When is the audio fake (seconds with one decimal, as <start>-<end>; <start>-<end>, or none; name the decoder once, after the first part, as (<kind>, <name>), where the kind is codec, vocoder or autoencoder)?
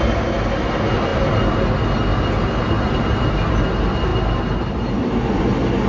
none